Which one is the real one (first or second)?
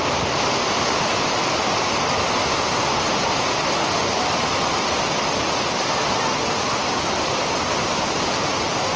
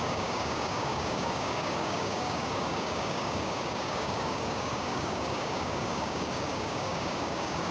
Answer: first